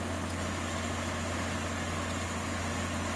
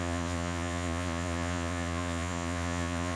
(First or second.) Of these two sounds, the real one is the first